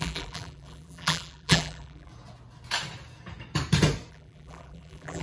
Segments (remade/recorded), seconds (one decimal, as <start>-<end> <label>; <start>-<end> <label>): 0.0-2.1 remade; 2.1-4.1 recorded; 4.1-5.2 remade

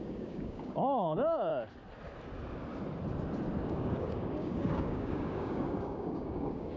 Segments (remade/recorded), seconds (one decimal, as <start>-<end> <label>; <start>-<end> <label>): 0.0-1.5 remade; 1.5-3.6 recorded; 3.6-6.8 remade

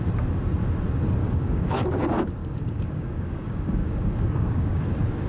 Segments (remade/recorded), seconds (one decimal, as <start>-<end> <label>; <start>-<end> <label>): 0.0-1.2 recorded; 1.2-2.0 remade; 2.0-2.4 recorded; 2.4-4.8 remade; 4.8-5.3 recorded

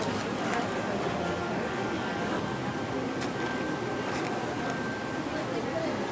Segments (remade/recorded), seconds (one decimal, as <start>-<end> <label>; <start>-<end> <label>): 0.0-1.4 recorded; 1.4-2.4 remade; 2.4-6.1 recorded

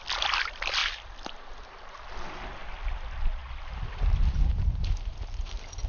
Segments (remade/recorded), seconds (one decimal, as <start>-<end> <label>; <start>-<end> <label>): 0.0-5.9 recorded